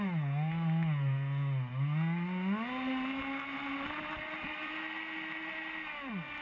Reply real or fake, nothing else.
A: real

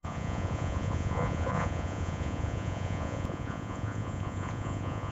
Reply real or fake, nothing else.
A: fake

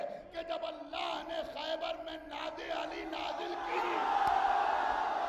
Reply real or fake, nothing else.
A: real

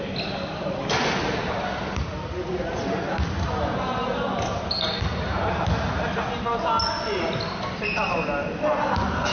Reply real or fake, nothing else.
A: real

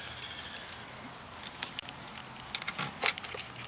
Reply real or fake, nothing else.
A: real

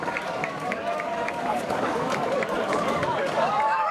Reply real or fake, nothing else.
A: fake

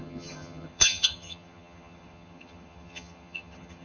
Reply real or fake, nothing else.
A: fake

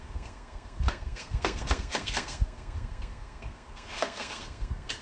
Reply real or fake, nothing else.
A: fake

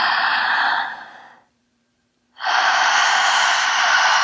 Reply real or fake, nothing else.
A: fake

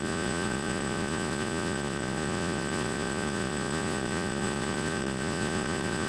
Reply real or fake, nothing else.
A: fake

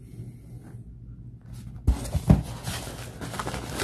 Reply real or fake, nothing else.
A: real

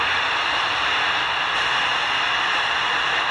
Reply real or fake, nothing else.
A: real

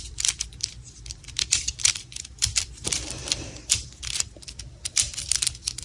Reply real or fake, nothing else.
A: fake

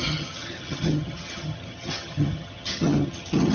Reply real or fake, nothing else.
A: fake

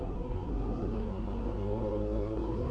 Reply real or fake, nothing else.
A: fake